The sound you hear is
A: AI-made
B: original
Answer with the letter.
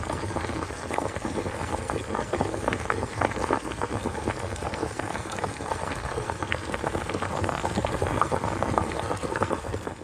A